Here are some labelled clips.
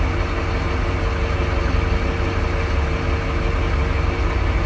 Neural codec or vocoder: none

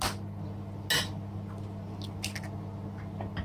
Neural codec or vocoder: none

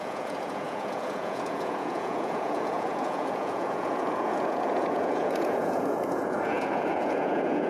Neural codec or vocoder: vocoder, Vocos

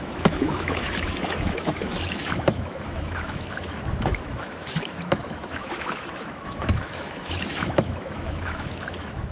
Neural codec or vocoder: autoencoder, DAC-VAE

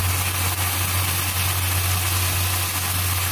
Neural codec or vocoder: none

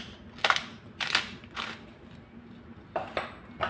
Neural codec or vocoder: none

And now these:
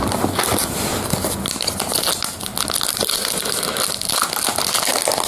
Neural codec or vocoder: none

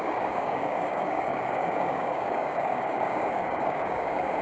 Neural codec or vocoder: codec, DAC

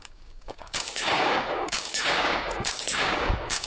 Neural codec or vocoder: codec, DAC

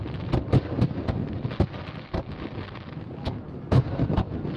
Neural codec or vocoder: none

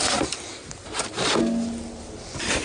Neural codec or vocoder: none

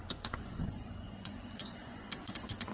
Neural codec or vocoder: vocoder, Vocos